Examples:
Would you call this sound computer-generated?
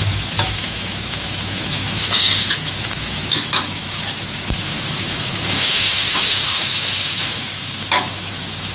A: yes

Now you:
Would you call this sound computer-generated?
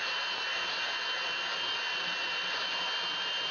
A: no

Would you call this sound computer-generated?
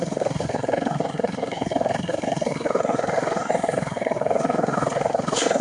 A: yes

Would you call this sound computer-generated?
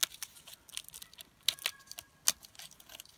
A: no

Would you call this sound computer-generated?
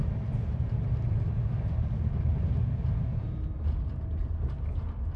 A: no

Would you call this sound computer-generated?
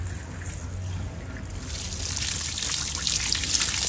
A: no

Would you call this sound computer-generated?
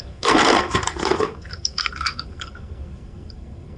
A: yes